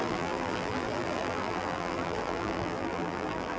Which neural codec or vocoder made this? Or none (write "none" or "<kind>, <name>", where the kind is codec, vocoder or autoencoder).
vocoder, BigVGAN v2